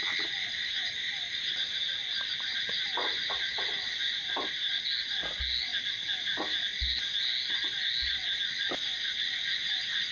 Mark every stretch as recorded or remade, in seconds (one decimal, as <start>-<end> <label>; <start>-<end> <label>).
0.0-0.6 recorded; 0.6-2.6 remade; 2.6-10.1 recorded